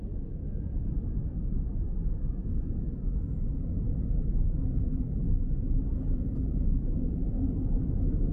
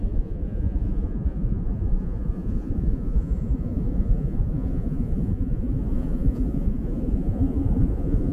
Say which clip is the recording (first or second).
first